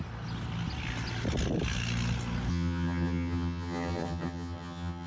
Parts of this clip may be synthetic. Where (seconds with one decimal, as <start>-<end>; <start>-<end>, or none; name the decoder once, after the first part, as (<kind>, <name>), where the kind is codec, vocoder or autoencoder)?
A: 2.5-5.1 (vocoder, HiFi-GAN)